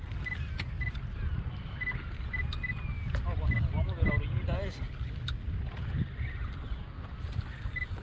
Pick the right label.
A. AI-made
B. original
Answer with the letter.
B